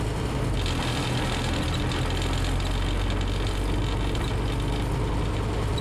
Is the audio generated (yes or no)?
no